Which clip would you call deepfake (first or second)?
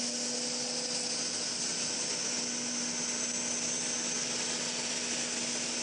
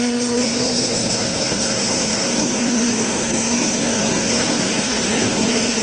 second